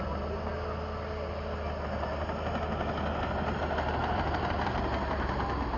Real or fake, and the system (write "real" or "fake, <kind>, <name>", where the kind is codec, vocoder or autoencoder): real